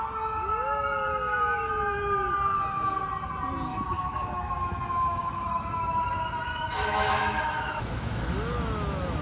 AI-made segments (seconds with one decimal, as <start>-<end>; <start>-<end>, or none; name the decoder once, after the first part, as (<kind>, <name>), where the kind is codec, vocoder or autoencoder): 1.1-1.7 (autoencoder, DAC-VAE); 3.7-9.2